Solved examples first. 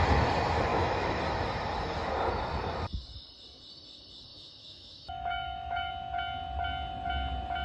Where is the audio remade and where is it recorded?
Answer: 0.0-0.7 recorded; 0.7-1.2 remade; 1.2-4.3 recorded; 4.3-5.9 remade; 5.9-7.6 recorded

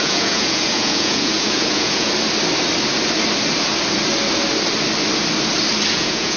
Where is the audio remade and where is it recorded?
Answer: 0.0-2.1 remade; 2.1-5.9 recorded; 5.9-6.4 remade

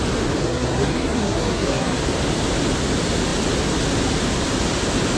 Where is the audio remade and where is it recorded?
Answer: 0.0-0.4 recorded; 0.4-2.0 remade; 2.0-5.2 recorded

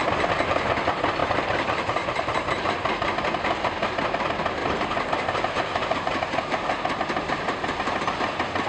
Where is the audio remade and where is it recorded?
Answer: 0.0-0.7 remade; 0.7-1.2 recorded; 1.2-2.5 remade; 2.5-4.6 recorded; 4.6-8.0 remade; 8.0-8.7 recorded

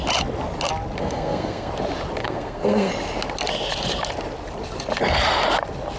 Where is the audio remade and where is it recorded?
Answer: 0.0-1.0 recorded; 1.0-1.7 remade; 1.7-2.2 recorded; 2.2-2.9 remade; 2.9-6.0 recorded